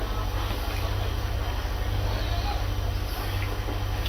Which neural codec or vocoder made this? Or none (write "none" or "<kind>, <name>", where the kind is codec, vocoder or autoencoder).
none